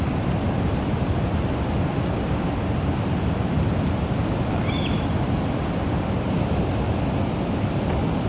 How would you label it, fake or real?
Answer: real